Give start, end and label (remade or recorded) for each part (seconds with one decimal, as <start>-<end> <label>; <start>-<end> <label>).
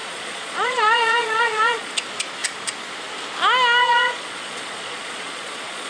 0.0-1.9 remade; 1.9-3.8 recorded; 3.8-5.9 remade